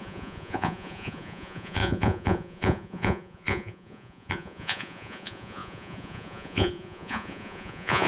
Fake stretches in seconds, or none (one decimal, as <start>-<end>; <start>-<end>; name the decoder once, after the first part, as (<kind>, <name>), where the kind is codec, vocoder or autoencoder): 0.0-8.1 (vocoder, Vocos)